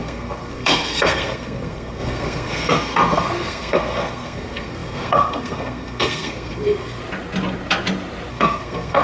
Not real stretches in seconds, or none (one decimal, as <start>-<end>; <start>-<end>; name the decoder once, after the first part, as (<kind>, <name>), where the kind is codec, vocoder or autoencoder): 0.0-7.0 (codec, SNAC); 8.3-9.0